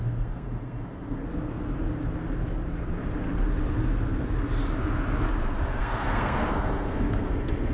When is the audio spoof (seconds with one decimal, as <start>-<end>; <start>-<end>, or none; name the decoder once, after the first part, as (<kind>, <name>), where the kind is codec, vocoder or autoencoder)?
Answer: 0.0-1.2 (codec, SNAC); 5.8-7.7